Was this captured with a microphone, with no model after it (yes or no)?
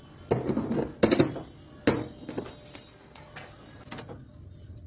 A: yes